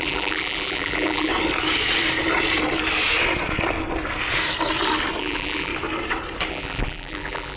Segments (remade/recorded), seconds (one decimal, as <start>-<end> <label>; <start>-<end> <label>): 0.0-1.3 remade; 1.3-5.2 recorded; 5.2-5.7 remade; 5.7-6.5 recorded; 6.5-7.6 remade